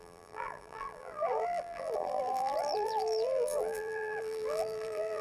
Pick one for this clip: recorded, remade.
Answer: remade